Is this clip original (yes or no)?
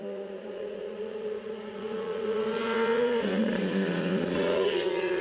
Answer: no